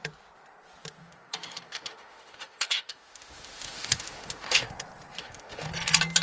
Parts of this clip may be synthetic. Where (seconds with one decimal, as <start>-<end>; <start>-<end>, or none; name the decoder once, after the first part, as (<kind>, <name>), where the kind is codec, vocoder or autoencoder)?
1.0-4.7 (autoencoder, DAC-VAE); 5.2-5.7